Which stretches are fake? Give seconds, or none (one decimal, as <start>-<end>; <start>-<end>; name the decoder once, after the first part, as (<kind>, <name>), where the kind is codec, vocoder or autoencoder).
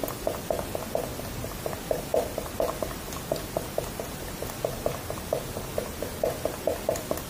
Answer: 1.1-1.6 (vocoder, BigVGAN v2); 2.1-2.8